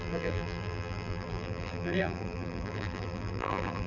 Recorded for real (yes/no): no